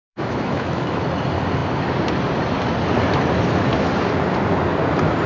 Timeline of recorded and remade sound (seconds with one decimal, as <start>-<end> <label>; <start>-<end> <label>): 0.0-1.0 remade; 1.0-5.3 recorded